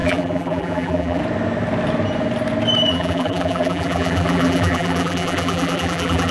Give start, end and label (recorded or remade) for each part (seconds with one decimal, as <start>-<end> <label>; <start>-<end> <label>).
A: 0.0-1.2 remade; 1.2-2.9 recorded; 2.9-6.3 remade